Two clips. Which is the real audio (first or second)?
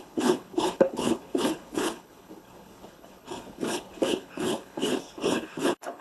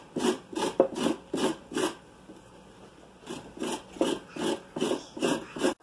second